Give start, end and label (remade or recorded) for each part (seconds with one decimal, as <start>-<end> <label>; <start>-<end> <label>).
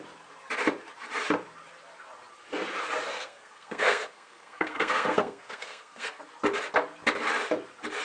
0.0-3.1 recorded; 3.1-6.2 remade; 6.2-8.0 recorded